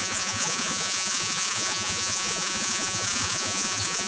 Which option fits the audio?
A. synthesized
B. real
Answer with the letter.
A